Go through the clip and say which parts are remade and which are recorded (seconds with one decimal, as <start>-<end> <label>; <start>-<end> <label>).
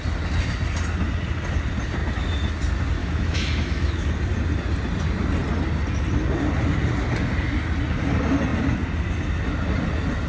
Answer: 0.0-3.0 recorded; 3.0-4.1 remade; 4.1-10.3 recorded